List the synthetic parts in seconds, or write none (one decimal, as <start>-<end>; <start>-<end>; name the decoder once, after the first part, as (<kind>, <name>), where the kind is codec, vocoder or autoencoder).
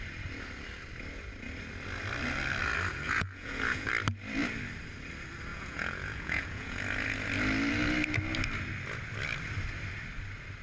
2.9-3.9 (vocoder, Vocos); 5.5-6.8